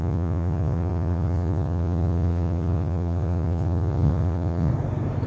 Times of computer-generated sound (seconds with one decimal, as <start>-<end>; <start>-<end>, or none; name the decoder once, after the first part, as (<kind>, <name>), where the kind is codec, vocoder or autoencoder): 0.0-4.7 (vocoder, Vocos)